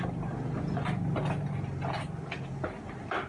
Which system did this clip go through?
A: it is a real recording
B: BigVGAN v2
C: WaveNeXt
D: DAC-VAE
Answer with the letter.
B